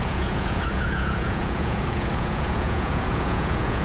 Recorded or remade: remade